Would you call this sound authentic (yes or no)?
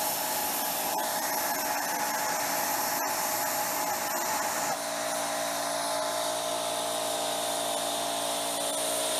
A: yes